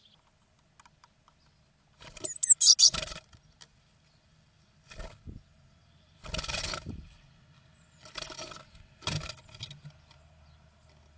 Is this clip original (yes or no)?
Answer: yes